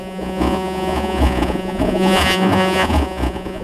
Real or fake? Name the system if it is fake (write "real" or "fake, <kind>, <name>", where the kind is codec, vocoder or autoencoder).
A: fake, vocoder, Vocos